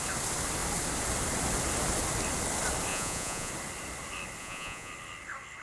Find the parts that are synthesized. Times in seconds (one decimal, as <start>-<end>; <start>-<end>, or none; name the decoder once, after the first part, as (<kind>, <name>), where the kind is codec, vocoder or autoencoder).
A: 2.9-3.5 (vocoder, Vocos); 4.4-4.9